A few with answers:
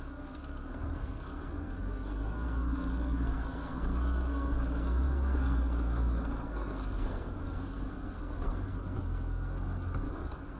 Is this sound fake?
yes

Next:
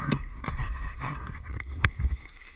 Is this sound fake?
yes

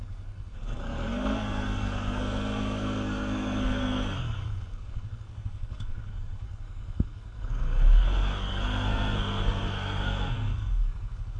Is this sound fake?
yes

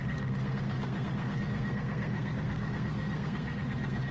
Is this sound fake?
yes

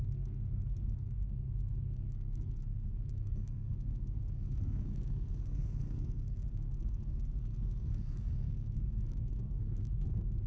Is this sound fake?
yes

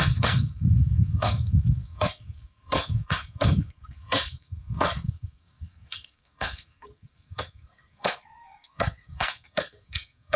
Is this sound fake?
yes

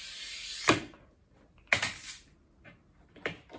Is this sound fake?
no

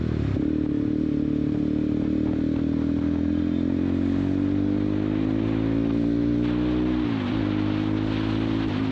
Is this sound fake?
no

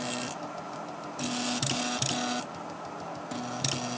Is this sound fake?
no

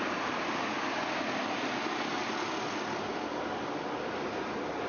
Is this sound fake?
no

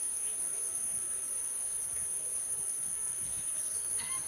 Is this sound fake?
yes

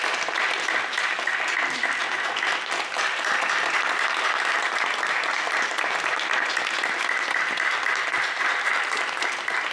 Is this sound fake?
no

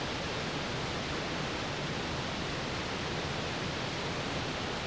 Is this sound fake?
no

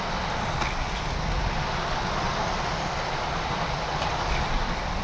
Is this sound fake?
no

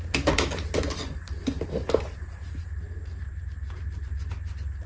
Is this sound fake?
no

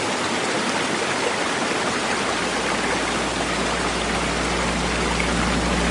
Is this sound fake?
no